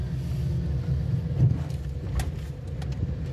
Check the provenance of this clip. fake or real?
real